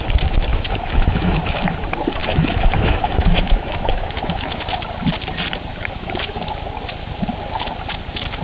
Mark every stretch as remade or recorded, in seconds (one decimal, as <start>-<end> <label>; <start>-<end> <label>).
0.0-0.5 recorded; 0.5-1.6 remade; 1.6-2.2 recorded; 2.2-4.6 remade; 4.6-5.7 recorded; 5.7-6.5 remade; 6.5-8.4 recorded